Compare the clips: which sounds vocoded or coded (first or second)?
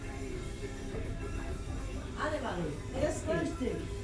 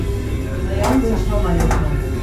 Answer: first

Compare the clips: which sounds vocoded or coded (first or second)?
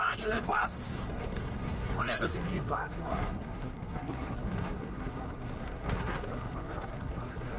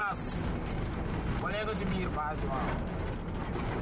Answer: first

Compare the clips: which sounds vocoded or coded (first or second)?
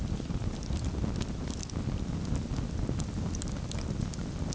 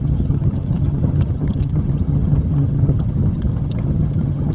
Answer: second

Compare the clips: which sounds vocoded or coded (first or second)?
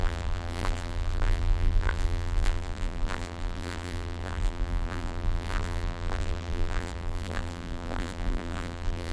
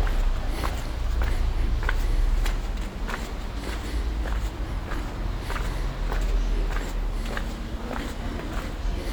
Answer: first